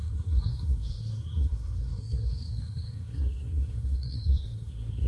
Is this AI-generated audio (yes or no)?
yes